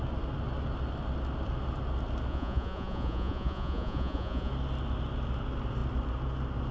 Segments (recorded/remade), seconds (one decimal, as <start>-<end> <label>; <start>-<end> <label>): 0.0-2.3 recorded; 2.3-4.5 remade; 4.5-6.7 recorded